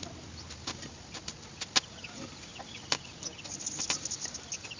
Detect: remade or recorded recorded